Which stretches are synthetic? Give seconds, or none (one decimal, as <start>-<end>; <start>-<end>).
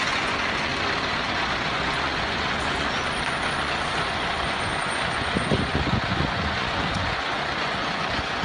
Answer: 0.0-0.7; 1.7-8.4